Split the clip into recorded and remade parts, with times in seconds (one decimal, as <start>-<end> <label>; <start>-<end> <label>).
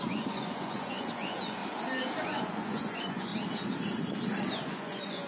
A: 0.0-1.6 remade; 1.6-2.2 recorded; 2.2-3.3 remade; 3.3-4.5 recorded; 4.5-5.3 remade